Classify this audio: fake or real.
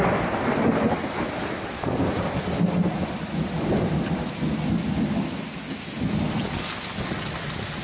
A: real